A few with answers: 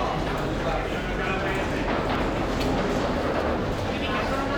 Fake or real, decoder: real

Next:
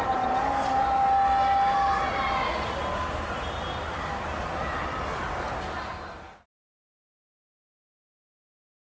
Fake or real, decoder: real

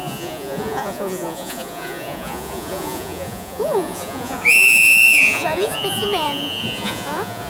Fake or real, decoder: fake, vocoder, Vocos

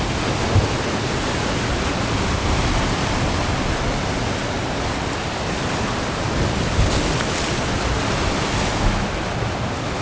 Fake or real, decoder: real